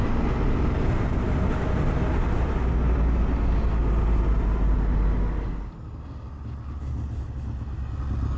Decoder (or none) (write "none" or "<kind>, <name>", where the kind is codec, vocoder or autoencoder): none